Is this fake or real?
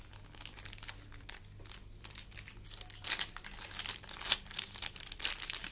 real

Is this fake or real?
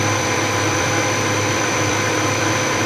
fake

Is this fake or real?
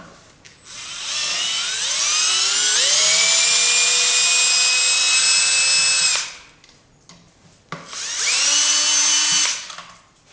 real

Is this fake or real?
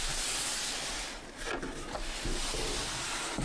real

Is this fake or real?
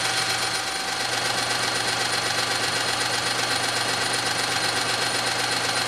real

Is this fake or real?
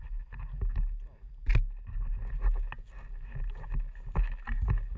real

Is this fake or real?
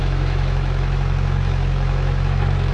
fake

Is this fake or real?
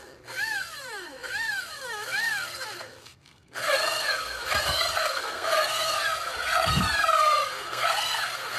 fake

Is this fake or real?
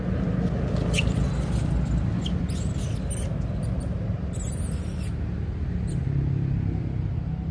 real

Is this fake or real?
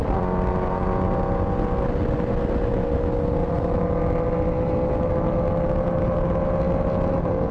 real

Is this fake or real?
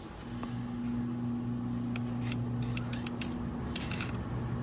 real